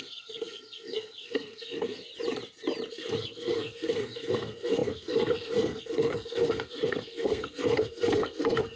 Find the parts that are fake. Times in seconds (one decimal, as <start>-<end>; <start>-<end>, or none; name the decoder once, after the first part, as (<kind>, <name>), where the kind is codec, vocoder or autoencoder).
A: 0.0-2.1 (codec, SNAC); 2.9-8.8